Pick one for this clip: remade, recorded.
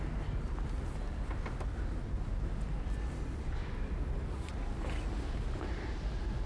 recorded